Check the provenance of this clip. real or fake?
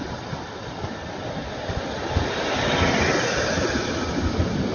real